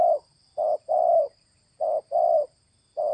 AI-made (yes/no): no